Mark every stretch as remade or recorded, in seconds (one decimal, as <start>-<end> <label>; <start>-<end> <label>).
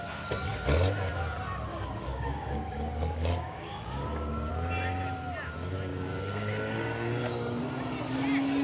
0.0-1.7 recorded; 1.7-4.5 remade; 4.5-5.9 recorded; 5.9-7.6 remade; 7.6-8.6 recorded